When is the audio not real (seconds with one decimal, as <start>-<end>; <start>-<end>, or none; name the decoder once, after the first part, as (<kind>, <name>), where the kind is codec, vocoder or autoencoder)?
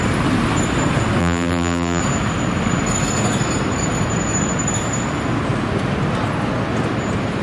1.2-2.0 (vocoder, BigVGAN v2)